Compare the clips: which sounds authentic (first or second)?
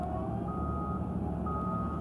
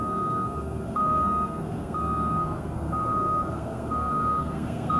first